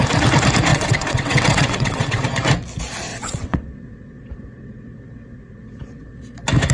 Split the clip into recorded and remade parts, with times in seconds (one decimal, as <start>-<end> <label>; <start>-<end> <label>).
0.0-0.7 recorded; 0.7-2.2 remade; 2.2-3.1 recorded; 3.1-6.2 remade; 6.2-6.7 recorded